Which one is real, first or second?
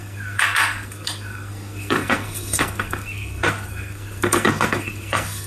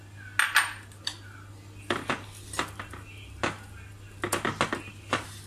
second